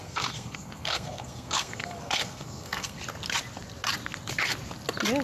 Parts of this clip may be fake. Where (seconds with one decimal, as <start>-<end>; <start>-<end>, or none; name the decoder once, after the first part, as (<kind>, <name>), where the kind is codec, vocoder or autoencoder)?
0.0-3.0 (codec, SNAC)